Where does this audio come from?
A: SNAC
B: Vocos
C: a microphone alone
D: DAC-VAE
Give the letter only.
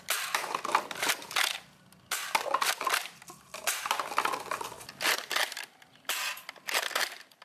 C